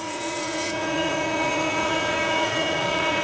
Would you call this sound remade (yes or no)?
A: yes